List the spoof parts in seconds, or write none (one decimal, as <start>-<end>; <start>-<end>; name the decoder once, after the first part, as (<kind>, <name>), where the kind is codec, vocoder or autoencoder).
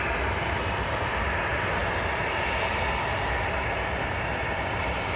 none